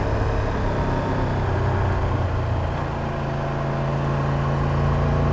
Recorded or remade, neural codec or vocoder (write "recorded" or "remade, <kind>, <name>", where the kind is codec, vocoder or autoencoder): recorded